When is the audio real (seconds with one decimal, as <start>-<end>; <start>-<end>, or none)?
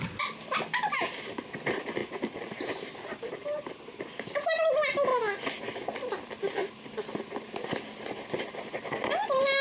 0.0-2.0; 4.0-9.6